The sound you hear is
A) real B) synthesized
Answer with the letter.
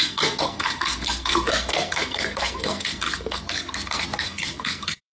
B